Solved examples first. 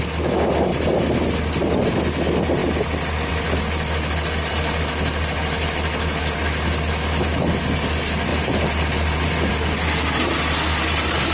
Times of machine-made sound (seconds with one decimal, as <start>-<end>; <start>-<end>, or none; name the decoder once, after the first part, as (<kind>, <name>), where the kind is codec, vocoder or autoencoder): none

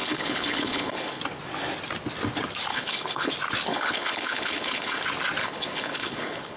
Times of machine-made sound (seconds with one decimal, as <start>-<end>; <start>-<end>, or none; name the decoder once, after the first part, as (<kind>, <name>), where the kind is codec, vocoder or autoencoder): 0.0-1.2 (codec, HILCodec); 2.7-3.3; 3.7-5.0; 5.4-6.6

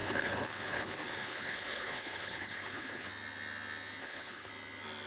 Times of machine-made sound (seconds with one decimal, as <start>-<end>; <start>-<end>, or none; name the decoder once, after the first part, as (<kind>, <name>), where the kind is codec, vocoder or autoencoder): 0.0-3.1 (codec, HILCodec); 4.0-4.5

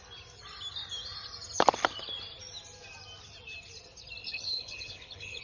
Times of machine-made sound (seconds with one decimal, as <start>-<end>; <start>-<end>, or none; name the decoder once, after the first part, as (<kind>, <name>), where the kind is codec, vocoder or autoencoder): 4.2-5.4 (codec, HILCodec)